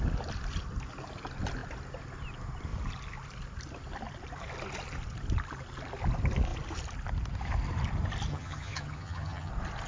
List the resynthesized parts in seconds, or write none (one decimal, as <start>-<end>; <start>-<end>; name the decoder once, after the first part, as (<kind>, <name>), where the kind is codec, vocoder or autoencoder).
8.3-9.5 (vocoder, HiFi-GAN)